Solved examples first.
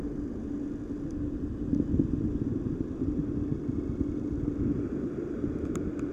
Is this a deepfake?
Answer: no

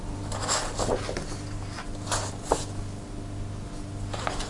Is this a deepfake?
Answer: no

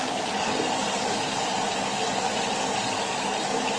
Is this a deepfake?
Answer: no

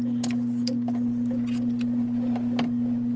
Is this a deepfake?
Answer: no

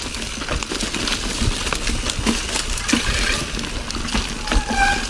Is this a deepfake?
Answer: no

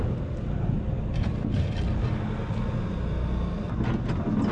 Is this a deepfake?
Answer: no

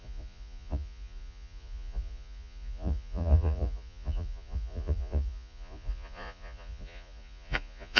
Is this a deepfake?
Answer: yes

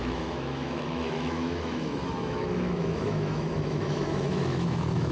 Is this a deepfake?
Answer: yes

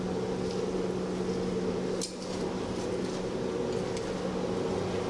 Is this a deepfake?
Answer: no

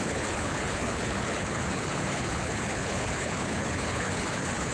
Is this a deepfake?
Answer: yes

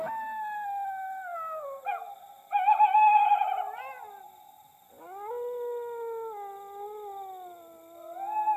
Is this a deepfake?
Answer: no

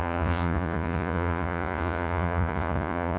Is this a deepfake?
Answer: yes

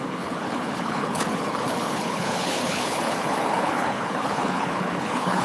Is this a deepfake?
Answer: yes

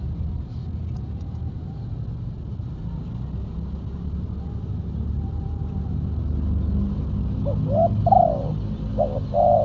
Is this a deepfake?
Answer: no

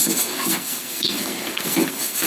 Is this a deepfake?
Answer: yes